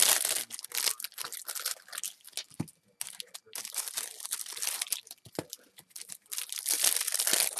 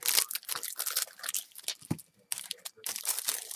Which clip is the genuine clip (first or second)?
first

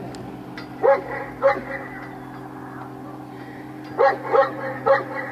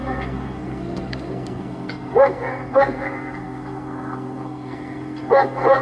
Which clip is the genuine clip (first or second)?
first